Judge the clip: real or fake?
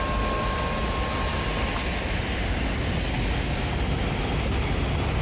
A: real